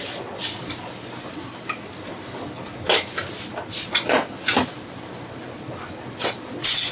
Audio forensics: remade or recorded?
remade